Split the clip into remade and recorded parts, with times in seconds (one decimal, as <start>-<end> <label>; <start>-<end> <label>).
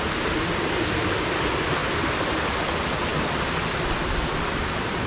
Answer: 0.0-5.1 recorded